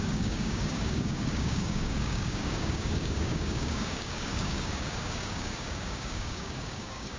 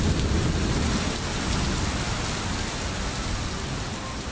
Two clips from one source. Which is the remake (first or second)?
first